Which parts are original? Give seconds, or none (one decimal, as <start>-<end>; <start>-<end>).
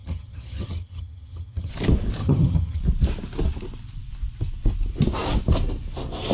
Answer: 1.7-2.2; 2.8-6.3